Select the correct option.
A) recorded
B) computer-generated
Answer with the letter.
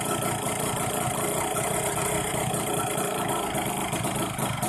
B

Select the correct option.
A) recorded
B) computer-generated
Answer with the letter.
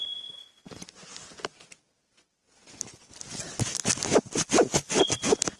A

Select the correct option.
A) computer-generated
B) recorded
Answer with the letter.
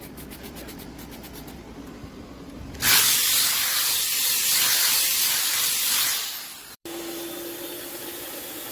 A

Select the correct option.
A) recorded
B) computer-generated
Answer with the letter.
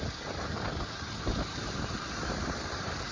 B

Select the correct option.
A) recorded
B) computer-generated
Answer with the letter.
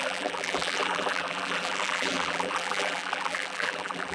B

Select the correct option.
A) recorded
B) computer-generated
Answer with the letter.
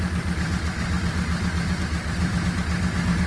B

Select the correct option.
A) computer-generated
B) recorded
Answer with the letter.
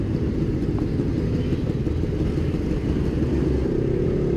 B